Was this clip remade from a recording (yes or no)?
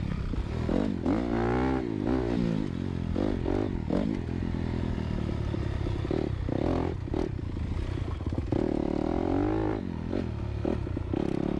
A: no